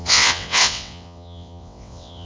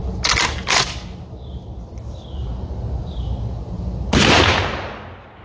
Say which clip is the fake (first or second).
first